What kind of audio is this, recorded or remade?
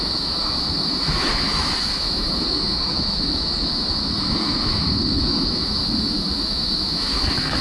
remade